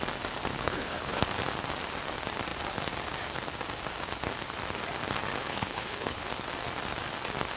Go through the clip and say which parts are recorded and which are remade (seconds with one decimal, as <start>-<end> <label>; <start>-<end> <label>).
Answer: 0.0-0.5 recorded; 0.5-1.2 remade; 1.2-5.4 recorded; 5.4-6.3 remade; 6.3-7.6 recorded